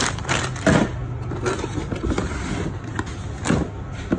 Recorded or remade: recorded